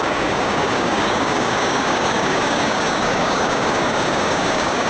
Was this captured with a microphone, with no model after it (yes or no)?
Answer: no